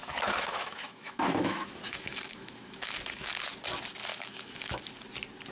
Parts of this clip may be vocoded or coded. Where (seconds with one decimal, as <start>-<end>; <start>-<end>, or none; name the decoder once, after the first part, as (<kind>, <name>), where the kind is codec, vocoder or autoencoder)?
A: 0.0-3.3 (autoencoder, DAC-VAE); 4.1-4.8